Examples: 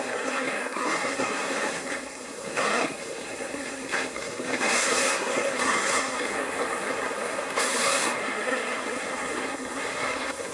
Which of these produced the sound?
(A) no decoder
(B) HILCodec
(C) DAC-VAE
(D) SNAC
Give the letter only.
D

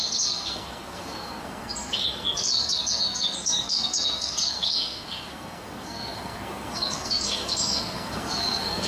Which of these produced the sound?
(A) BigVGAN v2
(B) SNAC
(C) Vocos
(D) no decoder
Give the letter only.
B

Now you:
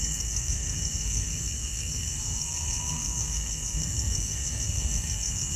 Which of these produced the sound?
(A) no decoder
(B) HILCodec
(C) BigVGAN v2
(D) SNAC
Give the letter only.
D